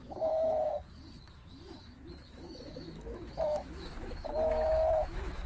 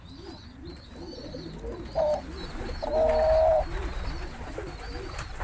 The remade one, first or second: first